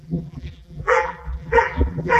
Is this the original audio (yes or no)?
no